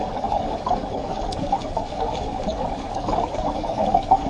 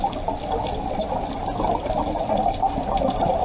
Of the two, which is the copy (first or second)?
first